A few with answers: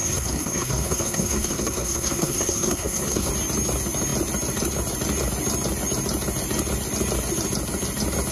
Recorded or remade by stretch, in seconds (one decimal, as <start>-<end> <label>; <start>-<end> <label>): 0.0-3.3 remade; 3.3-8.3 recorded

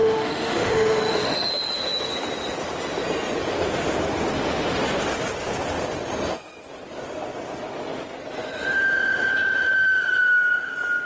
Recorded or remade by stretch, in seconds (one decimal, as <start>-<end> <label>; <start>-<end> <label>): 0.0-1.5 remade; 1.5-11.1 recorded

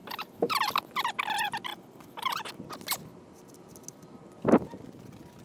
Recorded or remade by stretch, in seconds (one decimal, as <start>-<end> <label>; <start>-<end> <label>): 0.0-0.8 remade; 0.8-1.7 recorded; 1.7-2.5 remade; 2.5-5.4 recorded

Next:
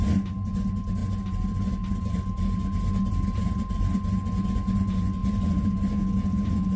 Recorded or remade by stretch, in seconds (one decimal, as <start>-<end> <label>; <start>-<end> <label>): 0.0-6.8 recorded

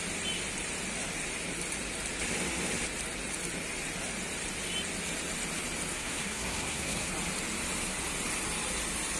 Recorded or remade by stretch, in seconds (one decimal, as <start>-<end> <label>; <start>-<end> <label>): 0.0-5.9 recorded; 5.9-7.1 remade; 7.1-9.2 recorded

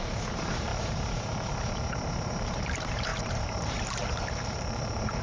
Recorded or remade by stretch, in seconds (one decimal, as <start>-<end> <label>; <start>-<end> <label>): 0.0-5.2 remade